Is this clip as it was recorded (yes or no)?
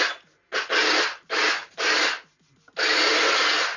yes